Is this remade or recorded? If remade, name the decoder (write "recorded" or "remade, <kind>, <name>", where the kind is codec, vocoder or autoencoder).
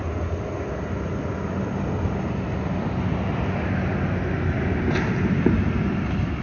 recorded